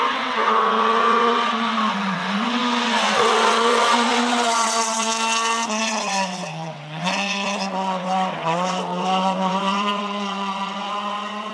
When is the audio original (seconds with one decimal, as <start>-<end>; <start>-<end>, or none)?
5.1-5.8